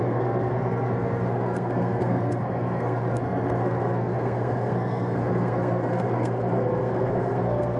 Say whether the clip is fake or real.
fake